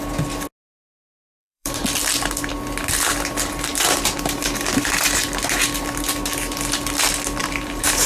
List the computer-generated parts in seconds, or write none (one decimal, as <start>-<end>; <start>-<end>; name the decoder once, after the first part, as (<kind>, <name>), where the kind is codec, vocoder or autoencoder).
1.2-1.8 (vocoder, BigVGAN v2); 7.4-8.1